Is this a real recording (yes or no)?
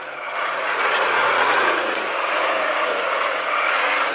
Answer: no